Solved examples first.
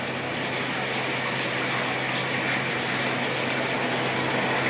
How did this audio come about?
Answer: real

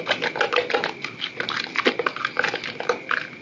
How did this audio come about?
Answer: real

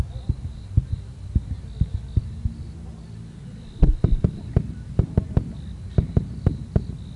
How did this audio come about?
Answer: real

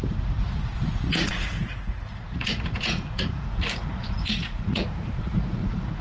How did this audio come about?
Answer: fake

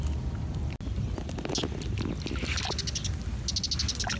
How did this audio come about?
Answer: real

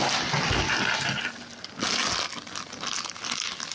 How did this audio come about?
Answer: real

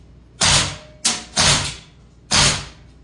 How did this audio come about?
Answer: real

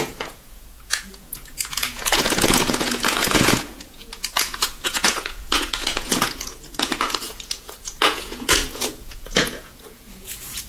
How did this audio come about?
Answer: fake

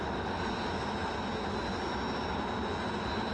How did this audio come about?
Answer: real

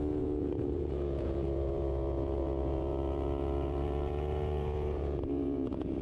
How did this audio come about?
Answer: fake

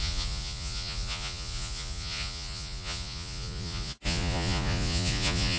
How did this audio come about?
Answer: fake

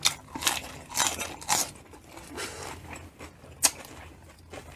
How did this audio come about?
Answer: real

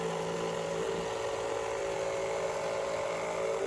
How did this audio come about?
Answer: real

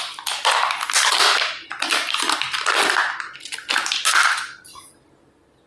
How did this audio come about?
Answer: real